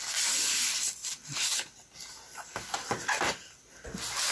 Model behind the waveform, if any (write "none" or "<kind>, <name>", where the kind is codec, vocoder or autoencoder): none